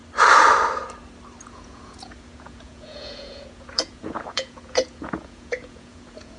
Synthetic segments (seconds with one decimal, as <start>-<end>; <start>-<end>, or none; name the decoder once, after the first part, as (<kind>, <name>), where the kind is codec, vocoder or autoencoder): 1.4-6.4 (vocoder, Vocos)